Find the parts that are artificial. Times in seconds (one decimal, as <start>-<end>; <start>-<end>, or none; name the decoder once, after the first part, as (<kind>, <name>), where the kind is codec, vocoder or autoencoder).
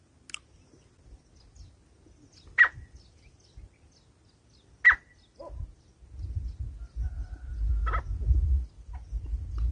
none